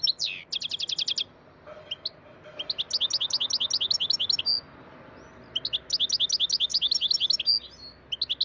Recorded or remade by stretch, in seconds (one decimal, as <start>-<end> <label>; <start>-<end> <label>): 0.0-8.4 recorded